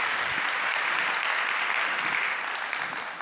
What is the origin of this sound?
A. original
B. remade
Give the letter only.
A